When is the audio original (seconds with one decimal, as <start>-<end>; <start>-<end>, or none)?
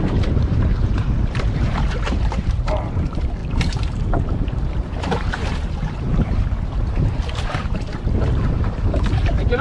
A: none